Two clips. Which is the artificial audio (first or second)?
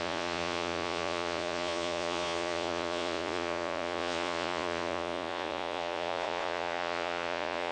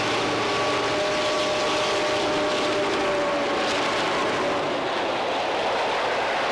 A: first